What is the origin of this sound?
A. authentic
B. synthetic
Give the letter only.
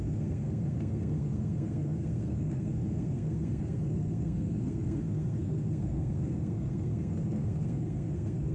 B